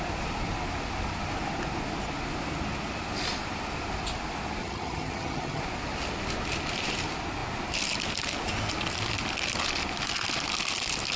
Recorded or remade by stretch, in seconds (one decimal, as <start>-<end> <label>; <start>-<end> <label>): 0.0-4.6 recorded; 4.6-5.6 remade; 5.6-11.2 recorded

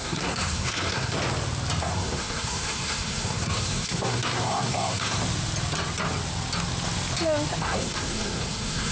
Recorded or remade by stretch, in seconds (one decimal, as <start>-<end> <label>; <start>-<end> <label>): 0.0-1.2 remade; 1.2-1.8 recorded; 1.8-5.2 remade; 5.2-7.6 recorded; 7.6-8.9 remade

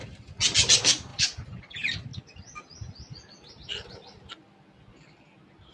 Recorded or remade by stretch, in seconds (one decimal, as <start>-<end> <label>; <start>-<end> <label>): 0.0-5.7 recorded

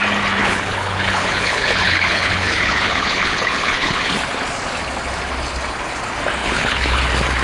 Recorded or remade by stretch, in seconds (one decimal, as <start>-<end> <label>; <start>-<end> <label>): 0.0-0.4 recorded; 0.4-4.0 remade; 4.0-6.4 recorded; 6.4-7.0 remade; 7.0-7.4 recorded

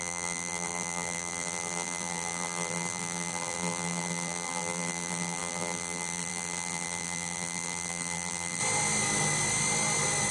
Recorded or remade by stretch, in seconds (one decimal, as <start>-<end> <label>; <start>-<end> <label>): 0.0-8.6 remade; 8.6-10.3 recorded

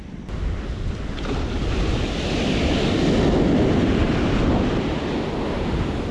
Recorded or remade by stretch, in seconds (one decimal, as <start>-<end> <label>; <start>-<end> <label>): 0.0-6.1 recorded

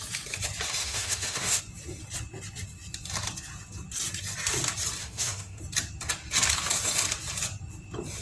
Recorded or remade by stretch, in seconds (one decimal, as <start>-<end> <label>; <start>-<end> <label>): 0.0-0.8 recorded; 0.8-1.6 remade; 1.6-5.0 recorded; 5.0-5.6 remade; 5.6-8.2 recorded